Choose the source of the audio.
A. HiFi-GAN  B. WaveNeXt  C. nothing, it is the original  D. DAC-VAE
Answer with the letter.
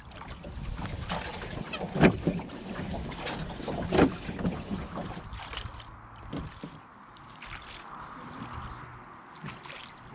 C